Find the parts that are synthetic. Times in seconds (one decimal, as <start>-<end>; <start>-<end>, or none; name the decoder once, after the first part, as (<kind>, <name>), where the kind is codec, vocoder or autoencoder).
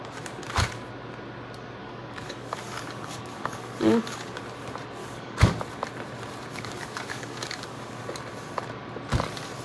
1.8-4.4 (codec, DAC); 5.0-5.6; 6.5-8.0